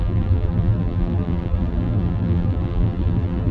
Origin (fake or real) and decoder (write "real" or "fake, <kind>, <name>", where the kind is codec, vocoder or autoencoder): fake, vocoder, BigVGAN v2